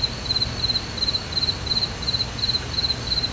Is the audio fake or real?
real